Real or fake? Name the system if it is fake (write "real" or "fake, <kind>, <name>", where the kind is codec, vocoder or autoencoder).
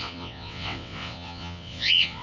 fake, vocoder, WaveNeXt